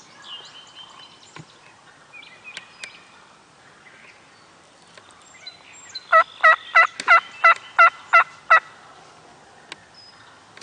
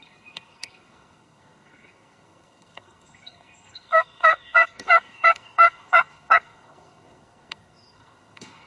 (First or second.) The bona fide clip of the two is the first